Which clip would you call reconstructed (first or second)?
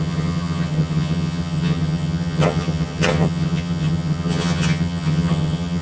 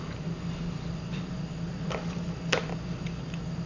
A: first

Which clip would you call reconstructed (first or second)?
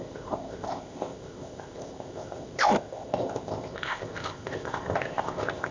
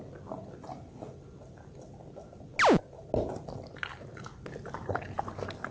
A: first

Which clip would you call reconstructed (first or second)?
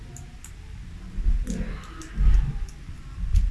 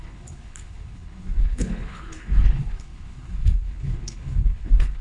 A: second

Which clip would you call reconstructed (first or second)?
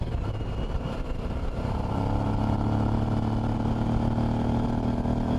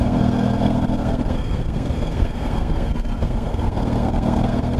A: second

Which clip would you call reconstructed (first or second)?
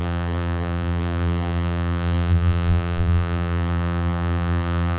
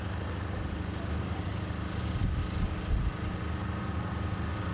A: first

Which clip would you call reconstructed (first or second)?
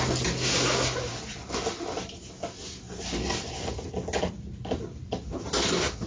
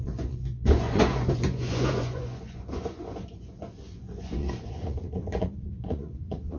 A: second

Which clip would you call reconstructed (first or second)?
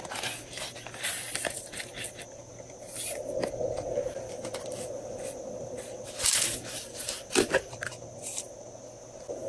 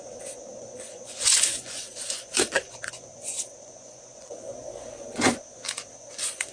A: second